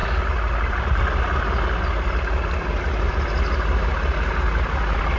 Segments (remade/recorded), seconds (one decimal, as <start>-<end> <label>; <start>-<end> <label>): 0.0-5.2 recorded